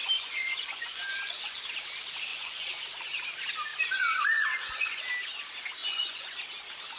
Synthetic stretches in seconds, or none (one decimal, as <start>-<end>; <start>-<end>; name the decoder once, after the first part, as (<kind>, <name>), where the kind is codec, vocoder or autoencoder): 0.0-1.6 (vocoder, Vocos); 2.3-2.8; 3.7-5.1; 5.8-6.3